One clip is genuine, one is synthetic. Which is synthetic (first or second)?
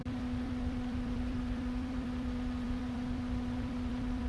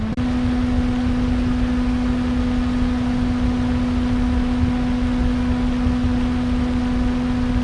first